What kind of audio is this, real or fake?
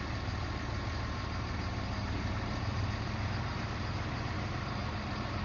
fake